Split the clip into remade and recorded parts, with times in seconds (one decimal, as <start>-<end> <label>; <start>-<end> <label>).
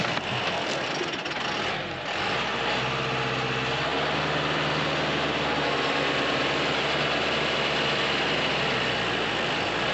0.0-9.9 recorded